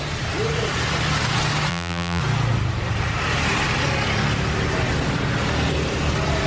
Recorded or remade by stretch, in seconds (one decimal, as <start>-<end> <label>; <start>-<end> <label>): 0.0-1.7 recorded; 1.7-2.2 remade; 2.2-6.5 recorded